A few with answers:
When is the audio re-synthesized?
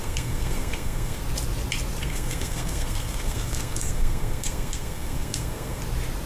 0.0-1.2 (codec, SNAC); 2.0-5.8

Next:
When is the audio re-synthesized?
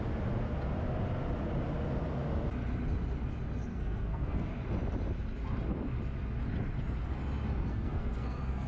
3.7-4.5 (codec, SNAC); 7.7-8.7